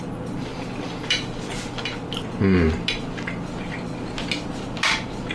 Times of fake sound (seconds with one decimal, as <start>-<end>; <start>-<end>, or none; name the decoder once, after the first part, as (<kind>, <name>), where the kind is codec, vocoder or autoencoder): none